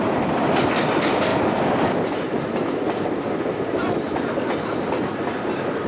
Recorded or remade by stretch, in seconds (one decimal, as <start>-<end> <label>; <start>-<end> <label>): 0.0-1.3 recorded; 1.3-4.6 remade; 4.6-5.9 recorded